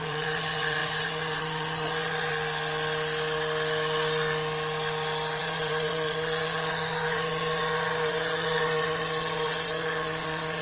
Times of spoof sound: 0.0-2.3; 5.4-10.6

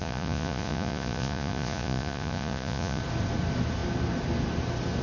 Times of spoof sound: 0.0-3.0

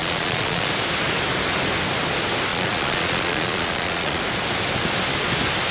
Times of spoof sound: 0.0-0.7; 2.5-4.2

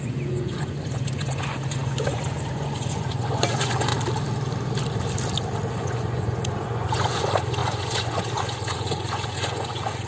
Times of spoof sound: 0.0-3.9; 5.7-10.1

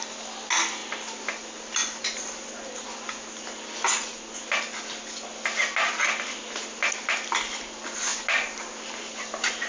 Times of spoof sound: none

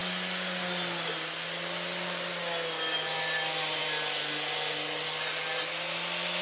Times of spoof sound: none

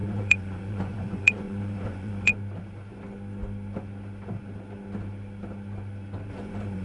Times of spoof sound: 0.0-2.3; 6.3-6.8